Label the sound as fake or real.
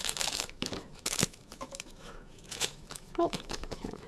fake